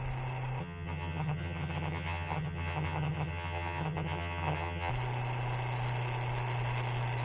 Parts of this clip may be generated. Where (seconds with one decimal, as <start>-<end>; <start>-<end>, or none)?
0.6-4.9